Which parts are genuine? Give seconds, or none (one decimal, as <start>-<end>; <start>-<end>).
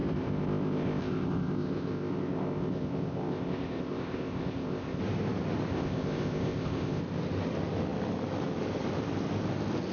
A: 5.0-5.7; 7.0-9.9